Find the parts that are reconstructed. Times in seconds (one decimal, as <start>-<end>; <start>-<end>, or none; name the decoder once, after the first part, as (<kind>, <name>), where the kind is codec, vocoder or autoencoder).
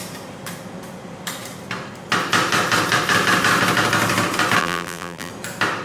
4.6-5.3 (vocoder, BigVGAN v2)